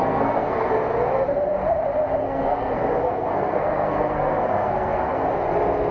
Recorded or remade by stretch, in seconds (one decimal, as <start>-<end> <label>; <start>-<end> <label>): 0.0-0.7 remade; 0.7-2.2 recorded; 2.2-5.3 remade; 5.3-5.9 recorded